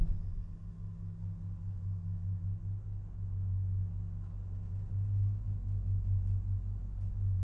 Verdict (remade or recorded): recorded